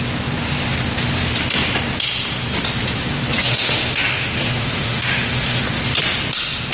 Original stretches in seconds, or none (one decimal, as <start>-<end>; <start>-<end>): 0.0-3.4; 5.6-6.7